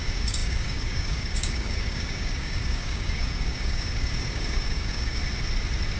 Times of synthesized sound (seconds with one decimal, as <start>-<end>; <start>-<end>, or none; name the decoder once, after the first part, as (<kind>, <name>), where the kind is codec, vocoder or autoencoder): 0.0-5.2 (codec, DAC)